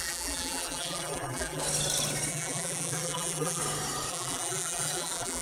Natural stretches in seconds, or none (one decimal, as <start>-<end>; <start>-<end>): 1.6-2.3; 3.6-4.1